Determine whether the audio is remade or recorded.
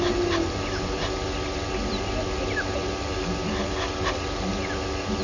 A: recorded